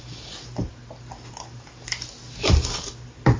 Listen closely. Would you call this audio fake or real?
real